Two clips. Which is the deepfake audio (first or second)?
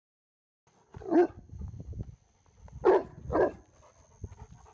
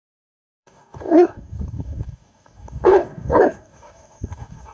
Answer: second